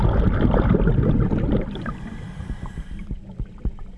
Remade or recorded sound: recorded